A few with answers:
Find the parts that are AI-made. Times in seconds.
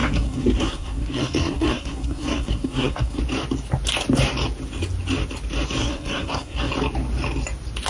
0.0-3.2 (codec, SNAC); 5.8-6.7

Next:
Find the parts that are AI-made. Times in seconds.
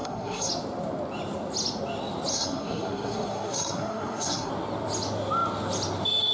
0.0-0.5 (codec, SNAC); 2.3-4.5